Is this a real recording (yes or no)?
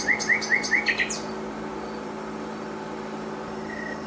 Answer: yes